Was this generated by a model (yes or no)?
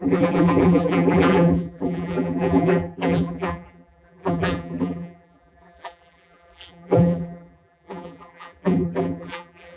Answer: yes